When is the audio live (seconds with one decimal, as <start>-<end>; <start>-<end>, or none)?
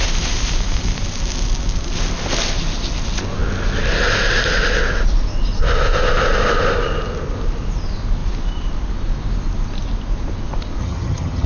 0.0-10.8